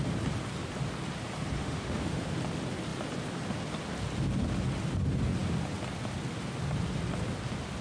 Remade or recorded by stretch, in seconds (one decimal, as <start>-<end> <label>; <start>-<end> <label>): 0.0-1.6 recorded; 1.6-2.3 remade; 2.3-7.8 recorded